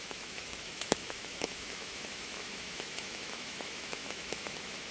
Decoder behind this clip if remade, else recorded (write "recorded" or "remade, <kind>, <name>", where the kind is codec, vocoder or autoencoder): remade, autoencoder, DAC-VAE